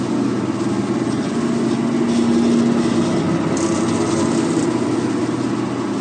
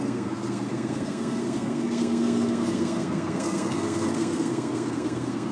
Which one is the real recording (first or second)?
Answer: first